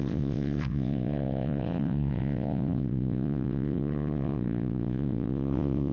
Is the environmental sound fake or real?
fake